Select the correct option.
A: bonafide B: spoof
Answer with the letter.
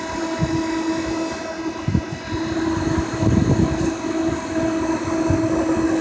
A